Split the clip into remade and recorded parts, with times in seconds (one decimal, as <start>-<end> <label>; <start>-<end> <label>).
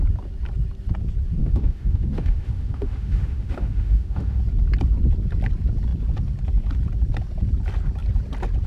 0.0-1.4 recorded; 1.4-4.4 remade; 4.4-8.7 recorded